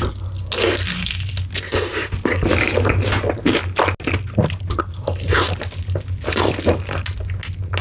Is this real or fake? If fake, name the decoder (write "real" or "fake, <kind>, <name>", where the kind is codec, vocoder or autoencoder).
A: real